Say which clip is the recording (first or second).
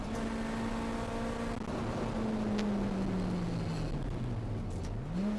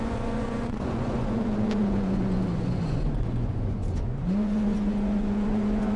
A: first